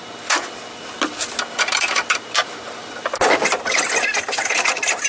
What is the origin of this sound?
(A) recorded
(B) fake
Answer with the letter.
A